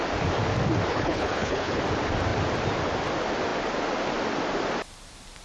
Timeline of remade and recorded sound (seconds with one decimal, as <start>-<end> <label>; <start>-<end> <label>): 0.0-0.9 recorded; 0.9-1.8 remade; 1.8-5.4 recorded